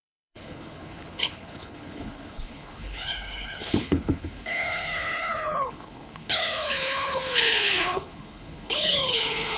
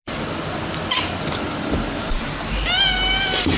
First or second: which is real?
second